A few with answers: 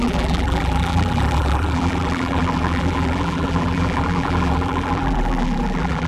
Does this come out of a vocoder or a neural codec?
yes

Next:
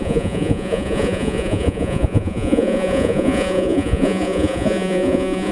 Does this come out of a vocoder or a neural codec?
yes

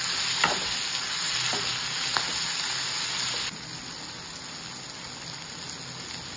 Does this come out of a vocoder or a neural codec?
no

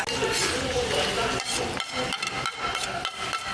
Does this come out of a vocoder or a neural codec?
no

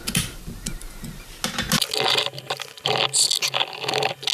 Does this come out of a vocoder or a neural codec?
no